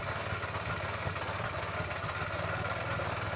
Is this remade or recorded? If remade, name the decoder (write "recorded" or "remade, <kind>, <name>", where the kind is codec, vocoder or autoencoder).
recorded